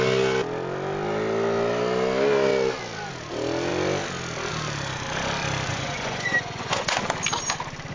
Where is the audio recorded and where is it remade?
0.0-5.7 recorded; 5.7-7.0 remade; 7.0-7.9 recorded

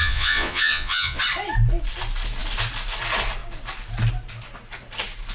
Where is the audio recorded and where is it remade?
0.0-1.2 remade; 1.2-5.3 recorded

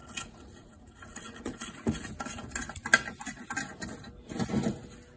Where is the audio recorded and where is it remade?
0.0-2.1 remade; 2.1-5.2 recorded

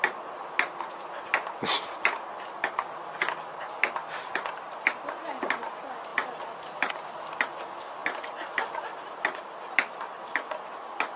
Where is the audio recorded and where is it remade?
0.0-11.2 recorded